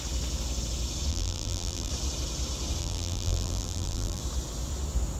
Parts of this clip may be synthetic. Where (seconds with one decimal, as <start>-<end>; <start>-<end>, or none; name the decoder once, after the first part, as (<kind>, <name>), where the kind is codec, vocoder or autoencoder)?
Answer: 1.1-1.9 (vocoder, BigVGAN v2); 2.8-4.2